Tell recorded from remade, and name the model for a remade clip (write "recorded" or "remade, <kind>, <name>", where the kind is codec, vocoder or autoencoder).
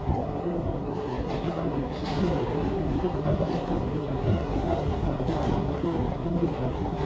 remade, codec, SNAC